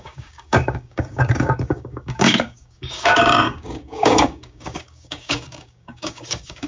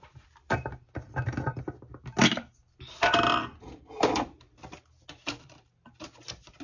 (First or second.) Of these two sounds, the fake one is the first